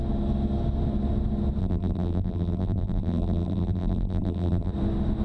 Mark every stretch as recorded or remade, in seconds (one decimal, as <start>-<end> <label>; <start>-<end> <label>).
0.0-1.6 recorded; 1.6-4.7 remade; 4.7-5.2 recorded